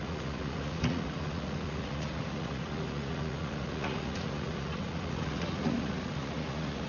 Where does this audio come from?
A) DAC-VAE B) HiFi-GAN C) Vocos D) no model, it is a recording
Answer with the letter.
C